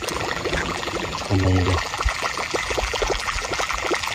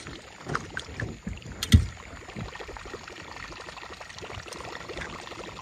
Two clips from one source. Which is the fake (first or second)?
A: first